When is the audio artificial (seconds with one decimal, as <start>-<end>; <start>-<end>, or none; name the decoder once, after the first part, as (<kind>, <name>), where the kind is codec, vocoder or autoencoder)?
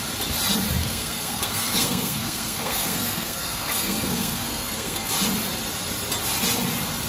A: 0.8-5.1 (codec, SNAC)